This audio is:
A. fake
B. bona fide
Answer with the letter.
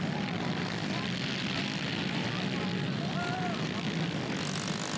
B